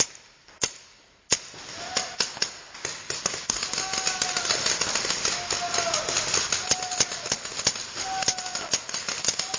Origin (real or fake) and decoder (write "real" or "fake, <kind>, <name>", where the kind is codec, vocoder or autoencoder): real